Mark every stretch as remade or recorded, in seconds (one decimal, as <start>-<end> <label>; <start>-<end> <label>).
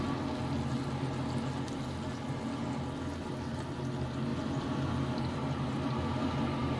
0.0-6.8 recorded